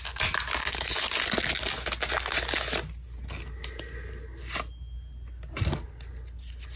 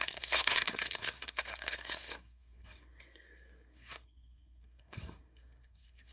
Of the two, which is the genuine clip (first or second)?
first